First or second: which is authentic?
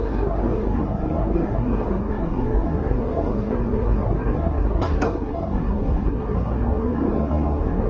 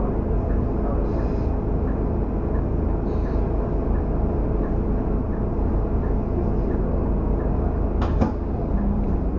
second